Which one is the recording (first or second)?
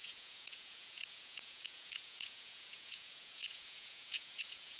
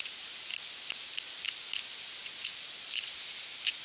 second